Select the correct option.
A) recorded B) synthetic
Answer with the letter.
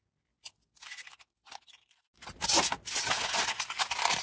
A